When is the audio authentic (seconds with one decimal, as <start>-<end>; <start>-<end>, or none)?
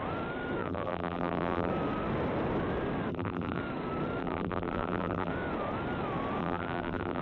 0.0-0.6; 1.7-3.1; 3.6-4.2; 5.3-6.4